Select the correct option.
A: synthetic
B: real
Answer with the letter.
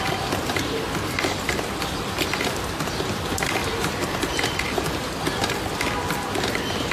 A